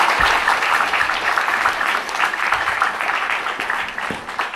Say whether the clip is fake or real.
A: real